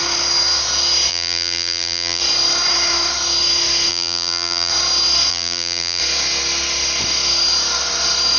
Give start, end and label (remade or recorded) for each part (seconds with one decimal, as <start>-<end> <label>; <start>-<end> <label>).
0.0-1.1 recorded; 1.1-2.2 remade; 2.2-3.9 recorded; 3.9-4.7 remade; 4.7-5.3 recorded; 5.3-6.0 remade; 6.0-8.4 recorded